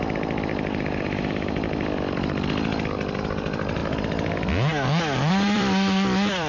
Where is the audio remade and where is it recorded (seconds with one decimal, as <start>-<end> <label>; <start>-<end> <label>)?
0.0-3.8 remade; 3.8-5.3 recorded; 5.3-6.5 remade